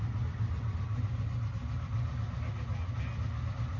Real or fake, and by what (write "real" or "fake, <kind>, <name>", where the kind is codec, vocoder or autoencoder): real